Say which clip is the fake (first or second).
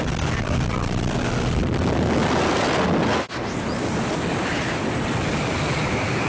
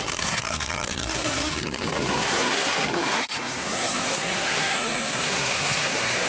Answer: second